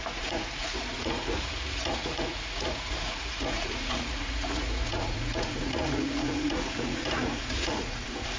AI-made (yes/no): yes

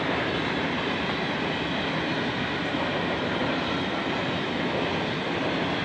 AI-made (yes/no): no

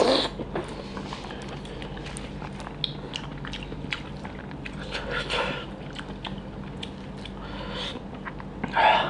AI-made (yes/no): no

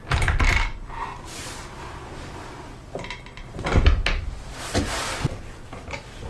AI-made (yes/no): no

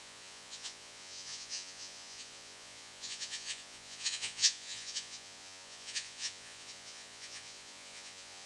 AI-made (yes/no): yes